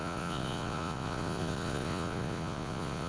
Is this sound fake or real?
fake